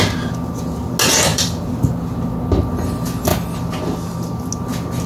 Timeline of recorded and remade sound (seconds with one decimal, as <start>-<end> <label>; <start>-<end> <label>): 0.0-1.3 recorded; 1.3-1.9 remade; 1.9-5.1 recorded